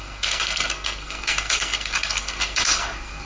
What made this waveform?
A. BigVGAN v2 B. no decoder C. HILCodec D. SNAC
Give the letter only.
D